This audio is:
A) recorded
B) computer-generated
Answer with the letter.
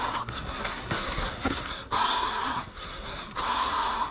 B